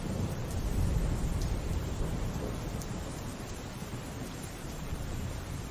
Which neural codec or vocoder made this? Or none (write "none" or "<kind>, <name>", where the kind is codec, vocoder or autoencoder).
vocoder, BigVGAN v2